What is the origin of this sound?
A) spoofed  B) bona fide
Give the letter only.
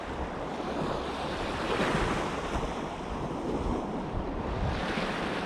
B